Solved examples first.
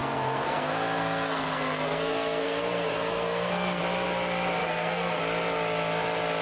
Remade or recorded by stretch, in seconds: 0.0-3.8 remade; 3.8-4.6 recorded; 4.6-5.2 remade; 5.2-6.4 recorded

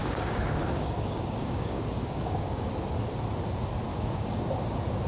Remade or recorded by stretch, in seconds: 0.0-2.7 remade; 2.7-3.9 recorded; 3.9-4.5 remade; 4.5-5.1 recorded

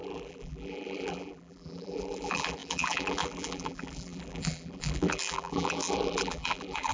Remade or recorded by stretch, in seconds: 0.0-6.9 remade